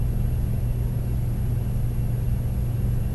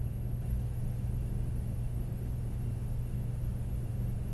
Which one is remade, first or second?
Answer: second